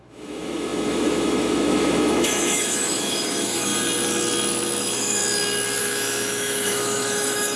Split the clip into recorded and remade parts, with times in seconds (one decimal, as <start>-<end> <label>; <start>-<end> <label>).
0.0-3.7 remade; 3.7-4.8 recorded; 4.8-5.2 remade; 5.2-5.8 recorded; 5.8-7.6 remade